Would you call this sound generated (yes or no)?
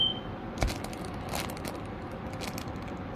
no